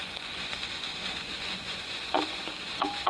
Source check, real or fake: fake